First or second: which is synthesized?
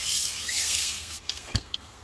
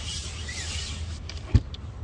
first